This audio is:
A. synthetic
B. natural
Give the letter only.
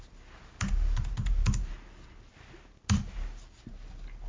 B